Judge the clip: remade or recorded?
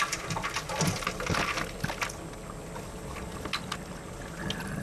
recorded